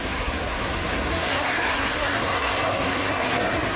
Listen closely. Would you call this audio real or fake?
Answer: fake